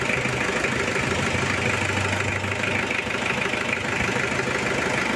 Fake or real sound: real